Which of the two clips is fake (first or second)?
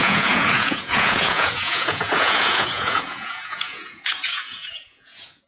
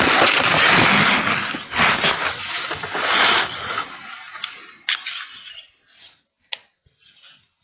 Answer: first